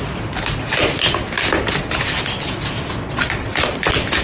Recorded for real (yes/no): yes